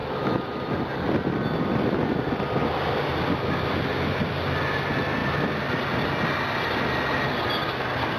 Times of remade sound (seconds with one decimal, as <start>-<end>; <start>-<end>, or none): 0.0-0.7